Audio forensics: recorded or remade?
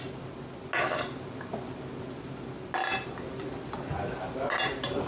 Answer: recorded